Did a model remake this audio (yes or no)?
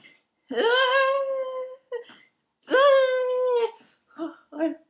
no